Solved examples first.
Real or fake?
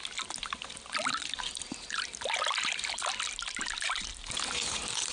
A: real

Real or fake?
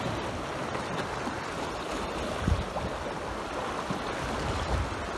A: real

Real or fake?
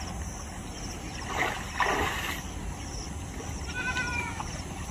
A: real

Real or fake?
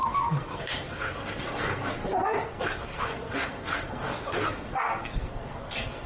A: fake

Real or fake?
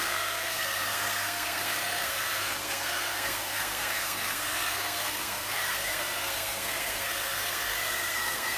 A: fake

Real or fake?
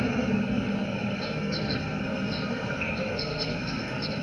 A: fake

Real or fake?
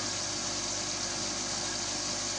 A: real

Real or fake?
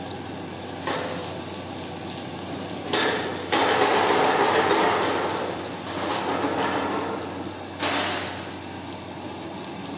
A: real